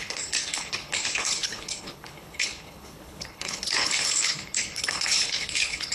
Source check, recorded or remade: remade